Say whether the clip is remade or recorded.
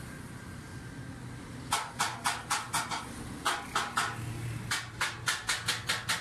recorded